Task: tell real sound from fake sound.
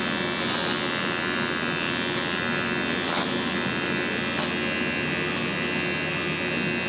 real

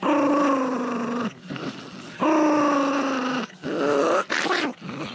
real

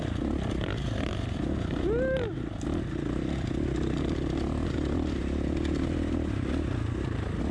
real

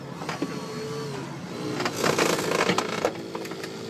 real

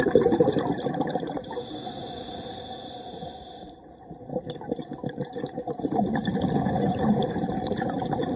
fake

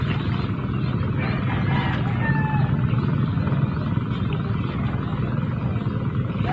real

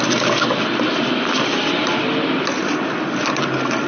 real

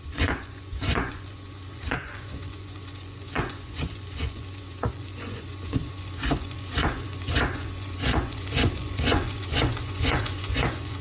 fake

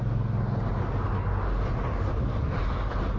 real